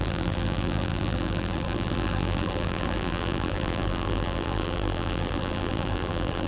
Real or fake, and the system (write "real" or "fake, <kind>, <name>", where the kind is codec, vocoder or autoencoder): fake, vocoder, BigVGAN v2